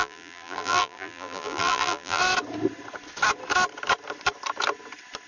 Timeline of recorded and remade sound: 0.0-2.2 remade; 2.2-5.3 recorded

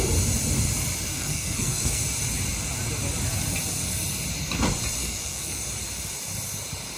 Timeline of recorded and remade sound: 0.0-1.1 recorded; 1.1-2.0 remade; 2.0-5.0 recorded; 5.0-5.6 remade; 5.6-7.0 recorded

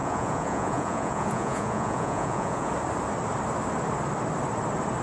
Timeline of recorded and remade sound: 0.0-2.7 remade; 2.7-5.0 recorded

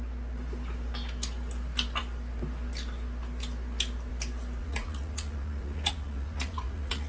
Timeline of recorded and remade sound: 0.0-4.6 recorded; 4.6-7.1 remade

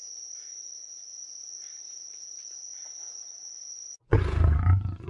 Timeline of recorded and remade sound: 0.0-0.6 remade; 0.6-3.7 recorded; 3.7-5.1 remade

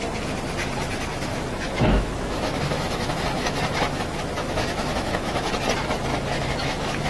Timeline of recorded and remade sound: 0.0-1.1 recorded; 1.1-5.4 remade; 5.4-6.1 recorded; 6.1-7.1 remade